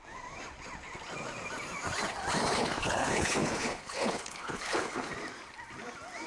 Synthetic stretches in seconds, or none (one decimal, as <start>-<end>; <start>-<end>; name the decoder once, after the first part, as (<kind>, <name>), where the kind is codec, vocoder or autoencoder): 2.5-5.1 (codec, HILCodec)